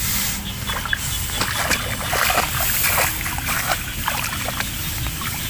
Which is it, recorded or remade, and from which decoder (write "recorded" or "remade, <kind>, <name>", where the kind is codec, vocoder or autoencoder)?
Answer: recorded